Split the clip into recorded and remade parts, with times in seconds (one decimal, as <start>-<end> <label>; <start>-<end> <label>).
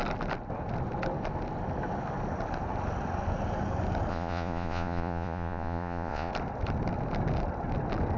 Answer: 0.0-4.1 recorded; 4.1-6.3 remade; 6.3-8.2 recorded